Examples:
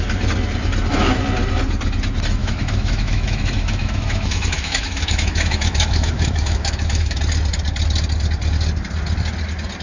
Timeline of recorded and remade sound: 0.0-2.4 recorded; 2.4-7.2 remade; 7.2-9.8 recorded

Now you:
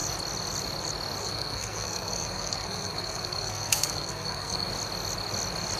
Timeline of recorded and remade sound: 0.0-1.2 recorded; 1.2-4.7 remade; 4.7-5.8 recorded